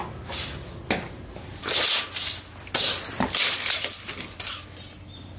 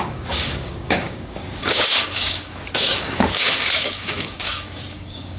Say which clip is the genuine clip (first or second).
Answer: first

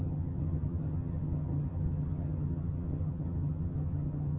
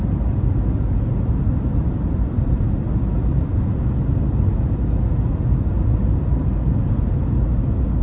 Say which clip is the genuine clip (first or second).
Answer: second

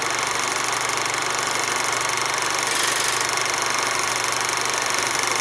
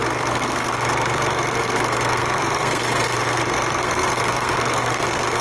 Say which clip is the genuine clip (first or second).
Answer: first